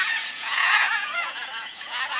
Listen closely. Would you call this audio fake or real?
fake